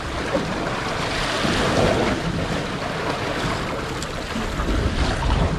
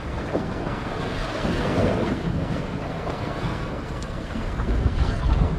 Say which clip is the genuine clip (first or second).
first